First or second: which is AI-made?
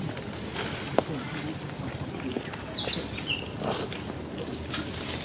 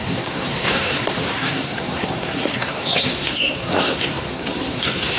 second